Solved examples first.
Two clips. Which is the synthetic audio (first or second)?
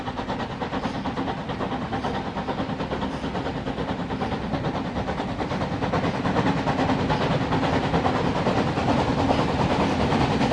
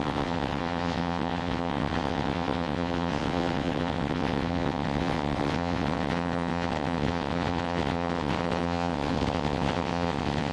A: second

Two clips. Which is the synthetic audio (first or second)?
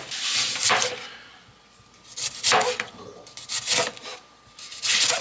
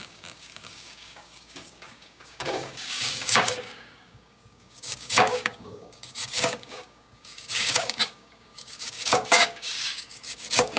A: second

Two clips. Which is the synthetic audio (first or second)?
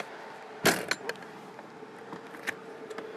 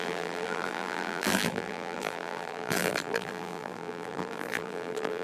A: second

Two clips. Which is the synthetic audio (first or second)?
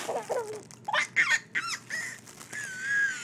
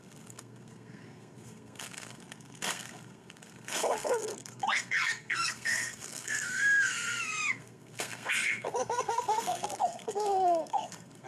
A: second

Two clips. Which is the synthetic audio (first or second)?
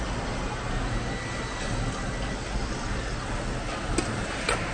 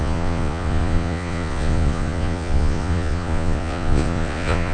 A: second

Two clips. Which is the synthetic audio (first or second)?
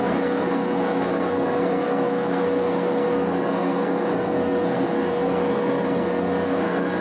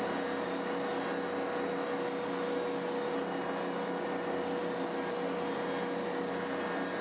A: first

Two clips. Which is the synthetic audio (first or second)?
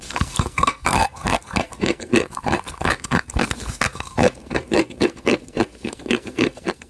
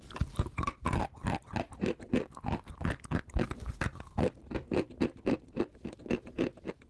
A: first